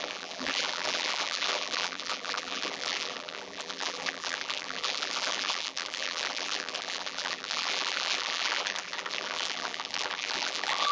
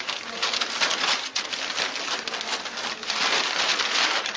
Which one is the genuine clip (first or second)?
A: second